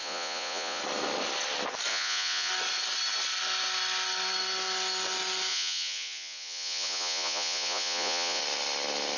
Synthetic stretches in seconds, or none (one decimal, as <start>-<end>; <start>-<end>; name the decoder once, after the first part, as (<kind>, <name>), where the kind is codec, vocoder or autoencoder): 0.0-0.8 (vocoder, Vocos); 1.9-2.5; 5.5-8.4